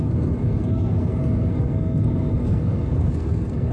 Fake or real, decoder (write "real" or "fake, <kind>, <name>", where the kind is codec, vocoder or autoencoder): fake, codec, SNAC